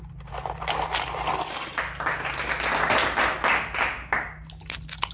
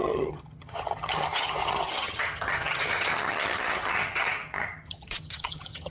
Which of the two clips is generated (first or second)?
second